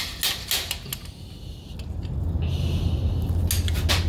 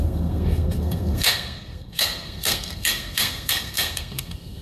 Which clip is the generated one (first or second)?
second